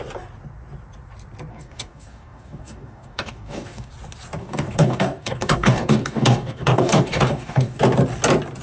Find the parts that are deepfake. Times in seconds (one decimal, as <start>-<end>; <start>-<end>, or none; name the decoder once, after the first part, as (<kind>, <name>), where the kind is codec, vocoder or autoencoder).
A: 1.5-3.9 (codec, DAC); 4.4-7.8